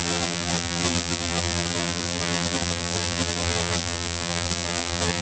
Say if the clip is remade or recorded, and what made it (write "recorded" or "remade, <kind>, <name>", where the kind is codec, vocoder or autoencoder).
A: remade, vocoder, BigVGAN v2